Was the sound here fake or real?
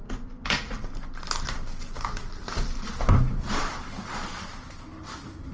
real